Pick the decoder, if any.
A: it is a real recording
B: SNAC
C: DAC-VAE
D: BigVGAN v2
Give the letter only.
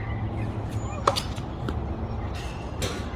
A